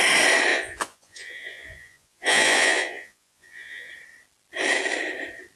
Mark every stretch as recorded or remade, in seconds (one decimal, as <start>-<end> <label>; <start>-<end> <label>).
0.0-0.5 recorded; 0.5-3.9 remade; 3.9-5.6 recorded